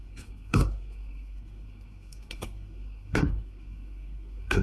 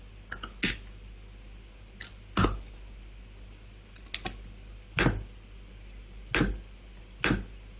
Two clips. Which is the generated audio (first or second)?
first